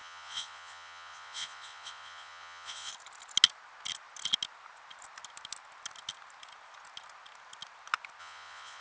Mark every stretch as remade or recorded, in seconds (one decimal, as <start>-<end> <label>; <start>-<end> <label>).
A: 0.0-2.9 remade; 2.9-8.2 recorded; 8.2-8.8 remade